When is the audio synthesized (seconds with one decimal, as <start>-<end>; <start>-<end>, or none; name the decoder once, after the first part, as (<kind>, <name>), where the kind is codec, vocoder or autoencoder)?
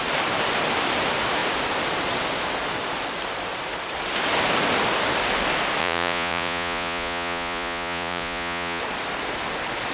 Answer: 5.8-8.8 (vocoder, Vocos)